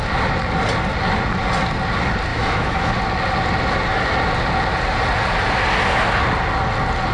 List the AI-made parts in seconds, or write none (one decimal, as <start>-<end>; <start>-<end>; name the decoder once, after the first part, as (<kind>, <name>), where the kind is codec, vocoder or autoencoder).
2.3-2.9 (autoencoder, DAC-VAE)